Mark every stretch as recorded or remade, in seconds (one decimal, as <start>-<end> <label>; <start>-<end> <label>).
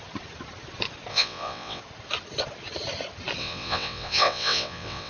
0.0-1.1 recorded; 1.1-1.8 remade; 1.8-3.4 recorded; 3.4-5.1 remade